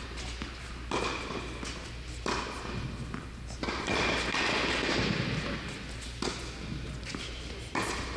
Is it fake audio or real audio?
real